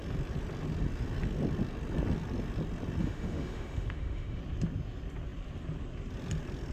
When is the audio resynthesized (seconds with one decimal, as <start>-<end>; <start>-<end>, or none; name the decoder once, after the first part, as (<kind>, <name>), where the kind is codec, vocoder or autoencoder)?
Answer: 3.0-4.4 (autoencoder, DAC-VAE)